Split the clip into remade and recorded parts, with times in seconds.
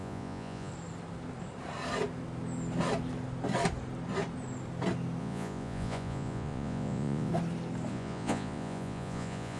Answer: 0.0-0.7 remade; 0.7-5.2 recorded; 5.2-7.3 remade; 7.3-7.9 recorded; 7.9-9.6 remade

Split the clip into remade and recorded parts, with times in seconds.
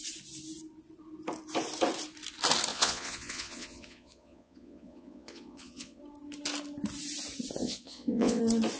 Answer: 0.0-2.7 recorded; 2.7-6.0 remade; 6.0-7.6 recorded; 7.6-8.4 remade; 8.4-8.8 recorded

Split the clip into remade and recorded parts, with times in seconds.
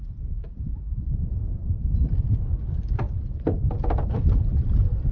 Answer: 0.0-1.6 remade; 1.6-5.1 recorded